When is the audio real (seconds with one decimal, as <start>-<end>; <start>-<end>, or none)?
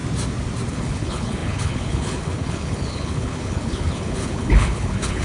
0.0-0.7